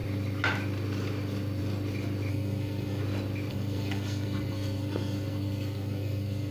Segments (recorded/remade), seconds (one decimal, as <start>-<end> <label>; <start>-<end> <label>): 0.0-2.3 recorded; 2.3-3.0 remade; 3.0-3.5 recorded; 3.5-6.5 remade

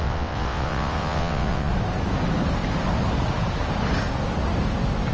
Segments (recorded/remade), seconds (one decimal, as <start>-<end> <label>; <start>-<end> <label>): 0.0-1.7 remade; 1.7-5.1 recorded

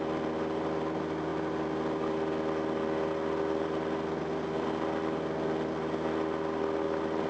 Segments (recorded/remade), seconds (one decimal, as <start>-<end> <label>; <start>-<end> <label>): 0.0-7.3 recorded

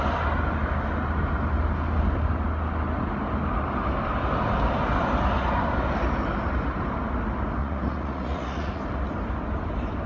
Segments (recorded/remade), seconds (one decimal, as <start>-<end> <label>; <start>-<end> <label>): 0.0-7.6 recorded; 7.6-8.8 remade; 8.8-10.1 recorded

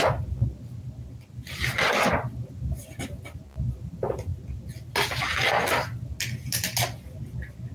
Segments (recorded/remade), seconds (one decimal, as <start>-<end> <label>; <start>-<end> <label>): 0.0-7.7 recorded

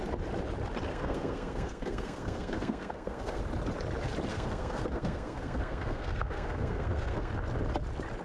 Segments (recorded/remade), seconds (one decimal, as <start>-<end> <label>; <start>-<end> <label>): 0.0-0.9 recorded; 0.9-3.4 remade; 3.4-4.3 recorded; 4.3-7.3 remade; 7.3-8.2 recorded

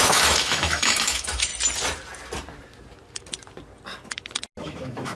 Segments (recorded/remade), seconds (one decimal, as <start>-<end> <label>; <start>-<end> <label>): 0.0-1.5 remade; 1.5-4.6 recorded; 4.6-5.1 remade

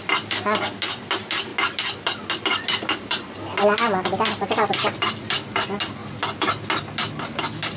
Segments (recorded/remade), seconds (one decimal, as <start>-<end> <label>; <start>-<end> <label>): 0.0-7.8 recorded